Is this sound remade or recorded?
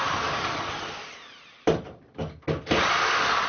recorded